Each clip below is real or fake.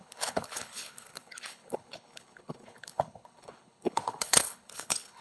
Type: fake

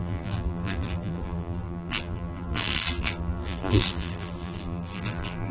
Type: fake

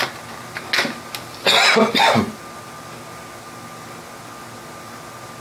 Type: real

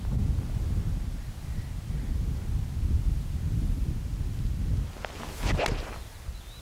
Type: real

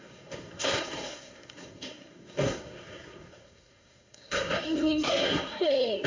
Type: fake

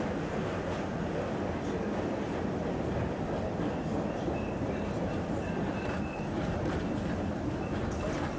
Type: real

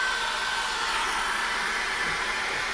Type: real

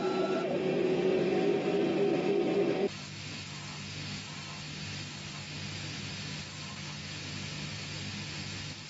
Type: real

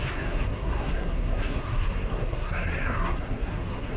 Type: fake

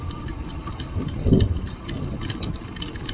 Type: real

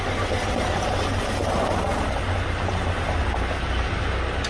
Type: real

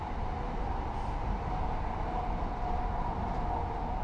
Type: real